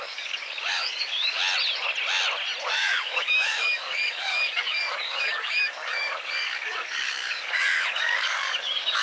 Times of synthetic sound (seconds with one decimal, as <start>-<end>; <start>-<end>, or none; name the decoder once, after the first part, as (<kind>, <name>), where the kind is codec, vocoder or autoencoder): 0.0-1.4 (codec, DAC); 2.7-9.0